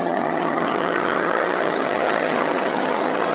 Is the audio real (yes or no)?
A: no